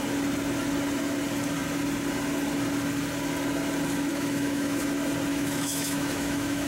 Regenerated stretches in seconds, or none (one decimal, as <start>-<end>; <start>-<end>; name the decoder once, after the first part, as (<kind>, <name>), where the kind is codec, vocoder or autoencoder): 4.1-4.8 (autoencoder, DAC-VAE); 5.3-6.7